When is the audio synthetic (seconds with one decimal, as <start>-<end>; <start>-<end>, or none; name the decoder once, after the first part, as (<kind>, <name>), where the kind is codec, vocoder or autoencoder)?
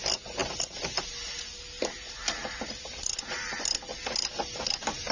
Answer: none